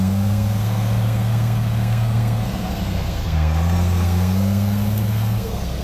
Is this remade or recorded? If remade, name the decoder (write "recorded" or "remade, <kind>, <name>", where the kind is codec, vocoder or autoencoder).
remade, codec, SNAC